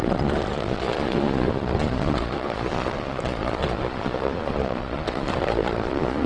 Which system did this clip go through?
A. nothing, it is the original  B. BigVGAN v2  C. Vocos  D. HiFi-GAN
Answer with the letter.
C